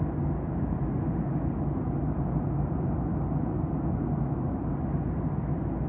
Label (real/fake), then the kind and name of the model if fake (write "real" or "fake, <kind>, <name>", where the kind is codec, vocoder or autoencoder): real